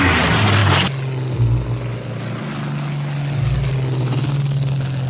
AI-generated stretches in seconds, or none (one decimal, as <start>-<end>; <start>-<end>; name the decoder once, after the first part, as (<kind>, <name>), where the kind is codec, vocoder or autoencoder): none